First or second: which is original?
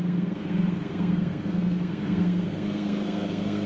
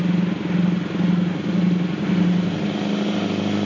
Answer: second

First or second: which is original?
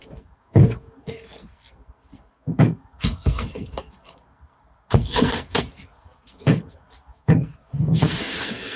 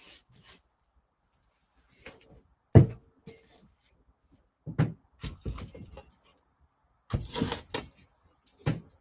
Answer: second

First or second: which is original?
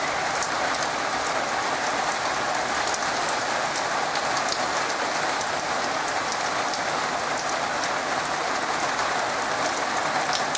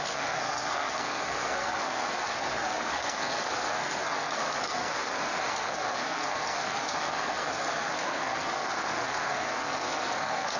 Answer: first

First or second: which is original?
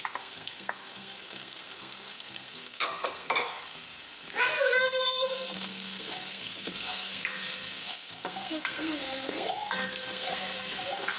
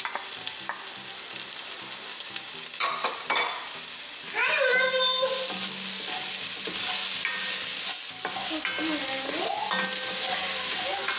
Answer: second